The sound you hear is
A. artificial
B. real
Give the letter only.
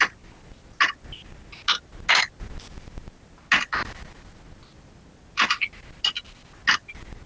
B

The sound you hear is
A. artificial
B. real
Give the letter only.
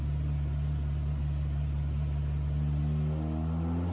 B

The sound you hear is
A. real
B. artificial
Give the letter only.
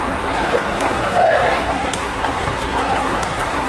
B